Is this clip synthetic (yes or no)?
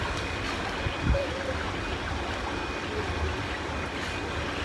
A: no